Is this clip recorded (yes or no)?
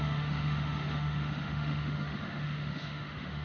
no